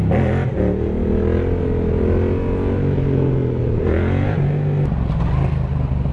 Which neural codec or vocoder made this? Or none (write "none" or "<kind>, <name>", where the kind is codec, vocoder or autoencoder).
none